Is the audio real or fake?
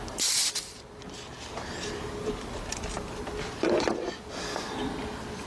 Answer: real